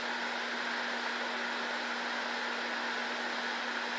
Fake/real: real